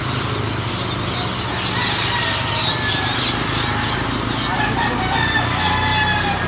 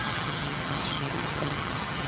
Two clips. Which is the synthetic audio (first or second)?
second